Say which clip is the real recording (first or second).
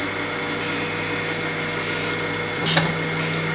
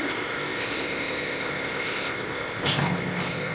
first